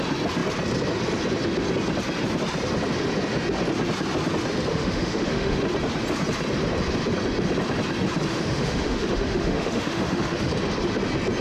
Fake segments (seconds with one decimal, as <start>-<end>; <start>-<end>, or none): 4.7-5.6; 8.3-10.5